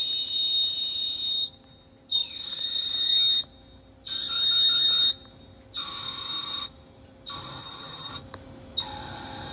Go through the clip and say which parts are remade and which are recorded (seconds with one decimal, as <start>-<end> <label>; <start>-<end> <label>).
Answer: 0.0-7.6 recorded; 7.6-8.1 remade; 8.1-9.5 recorded